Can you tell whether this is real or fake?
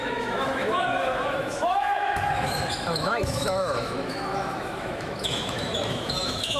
fake